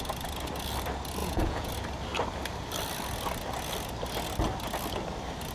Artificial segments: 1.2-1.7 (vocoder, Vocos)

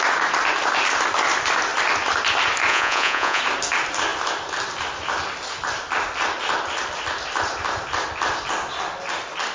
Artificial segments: 2.7-3.4 (vocoder, Vocos)

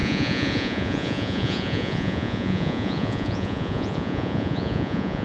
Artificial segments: 0.0-5.2 (vocoder, Vocos)

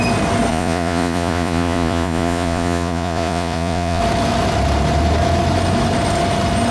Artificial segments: 0.5-4.0 (vocoder, Vocos)

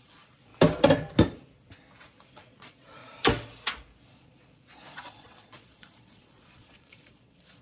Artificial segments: 0.0-0.5 (vocoder, Vocos); 2.0-3.0; 4.1-7.6

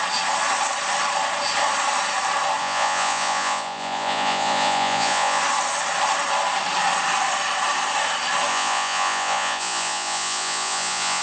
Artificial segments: 2.6-5.4 (vocoder, Vocos); 8.5-11.2

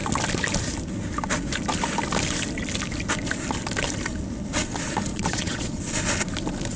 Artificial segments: 5.1-5.8 (vocoder, Vocos)

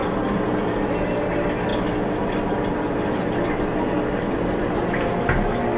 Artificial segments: none